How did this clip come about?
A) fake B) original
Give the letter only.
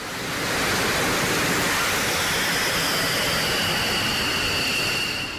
B